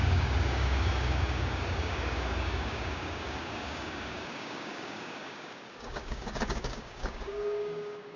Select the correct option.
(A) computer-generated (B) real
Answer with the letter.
A